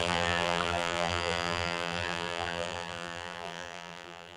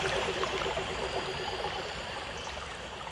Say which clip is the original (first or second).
second